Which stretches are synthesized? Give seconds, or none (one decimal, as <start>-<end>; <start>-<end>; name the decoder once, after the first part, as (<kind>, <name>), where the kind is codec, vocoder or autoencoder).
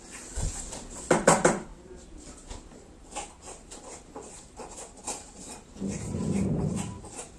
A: none